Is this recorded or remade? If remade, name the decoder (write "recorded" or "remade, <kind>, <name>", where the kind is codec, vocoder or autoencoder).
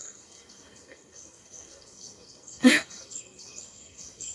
remade, codec, SNAC